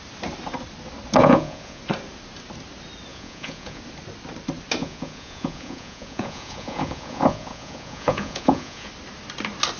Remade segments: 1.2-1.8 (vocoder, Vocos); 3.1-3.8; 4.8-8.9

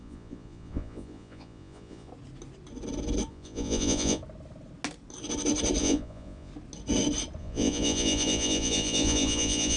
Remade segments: 0.0-2.1 (vocoder, Vocos); 3.3-4.2; 5.8-6.5; 7.4-9.8

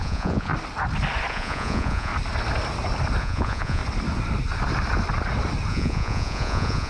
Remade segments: 0.0-0.5 (vocoder, Vocos); 1.3-2.1; 3.2-3.8; 5.7-6.9

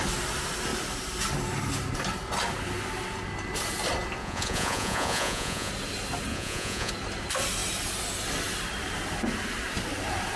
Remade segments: 4.2-5.7 (vocoder, Vocos); 6.3-6.9

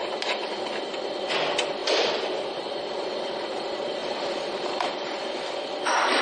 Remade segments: none

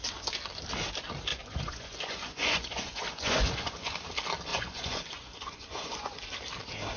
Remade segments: 1.3-3.9 (vocoder, Vocos); 4.5-6.2

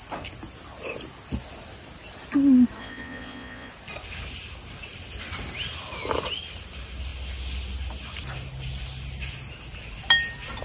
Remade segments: 2.8-3.7 (vocoder, Vocos)

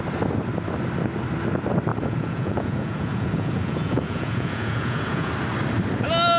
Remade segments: 1.9-5.3 (vocoder, Vocos)